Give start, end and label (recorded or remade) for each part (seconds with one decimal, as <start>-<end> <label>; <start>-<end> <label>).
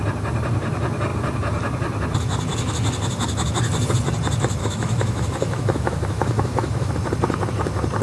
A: 0.0-4.6 recorded; 4.6-6.9 remade; 6.9-8.0 recorded